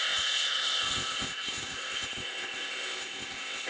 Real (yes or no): no